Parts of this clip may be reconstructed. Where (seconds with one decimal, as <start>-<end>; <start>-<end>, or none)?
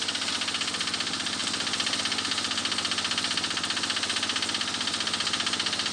none